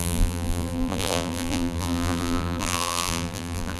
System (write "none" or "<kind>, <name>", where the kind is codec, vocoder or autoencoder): vocoder, BigVGAN v2